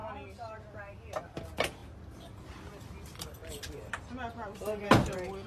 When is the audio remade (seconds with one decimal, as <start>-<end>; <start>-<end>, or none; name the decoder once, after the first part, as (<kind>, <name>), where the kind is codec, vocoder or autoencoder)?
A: none

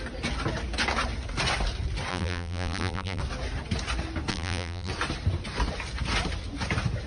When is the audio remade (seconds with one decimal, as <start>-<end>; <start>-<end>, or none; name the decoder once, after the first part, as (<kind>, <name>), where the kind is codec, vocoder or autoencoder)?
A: 2.1-3.2 (vocoder, BigVGAN v2); 4.3-4.9

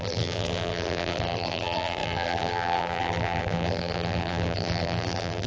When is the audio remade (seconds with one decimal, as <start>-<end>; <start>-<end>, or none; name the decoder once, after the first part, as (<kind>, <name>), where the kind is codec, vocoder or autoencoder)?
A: 0.0-5.5 (vocoder, BigVGAN v2)

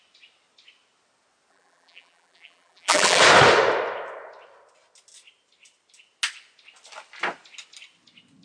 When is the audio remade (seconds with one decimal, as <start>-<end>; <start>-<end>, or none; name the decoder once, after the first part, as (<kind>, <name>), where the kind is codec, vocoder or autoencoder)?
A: 1.5-3.2 (vocoder, BigVGAN v2)

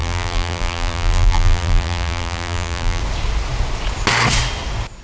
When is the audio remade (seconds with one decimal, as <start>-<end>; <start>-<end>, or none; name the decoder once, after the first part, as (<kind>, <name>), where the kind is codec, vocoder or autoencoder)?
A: 0.0-3.0 (vocoder, BigVGAN v2)

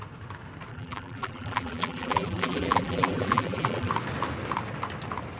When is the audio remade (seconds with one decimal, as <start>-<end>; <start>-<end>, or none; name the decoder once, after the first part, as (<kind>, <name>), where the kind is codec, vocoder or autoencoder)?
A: 0.7-3.9 (vocoder, BigVGAN v2)